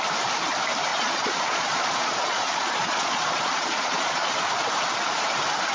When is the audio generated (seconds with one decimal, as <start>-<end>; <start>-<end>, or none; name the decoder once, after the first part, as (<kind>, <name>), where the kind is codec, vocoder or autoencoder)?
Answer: 0.9-4.3 (vocoder, Vocos)